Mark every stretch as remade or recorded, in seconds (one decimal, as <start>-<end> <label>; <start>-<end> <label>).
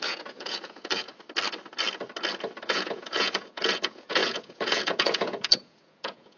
0.0-1.1 remade; 1.1-2.7 recorded; 2.7-6.4 remade